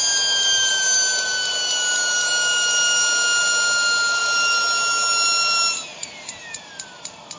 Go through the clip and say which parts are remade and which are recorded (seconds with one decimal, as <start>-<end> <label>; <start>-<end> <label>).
0.0-7.4 recorded